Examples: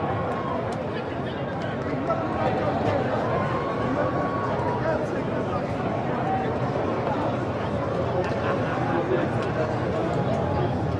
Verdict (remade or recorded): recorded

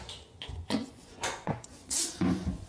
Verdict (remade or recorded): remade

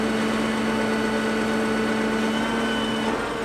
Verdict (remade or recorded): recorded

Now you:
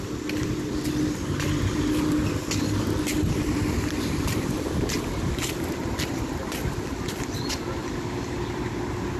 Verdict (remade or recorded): recorded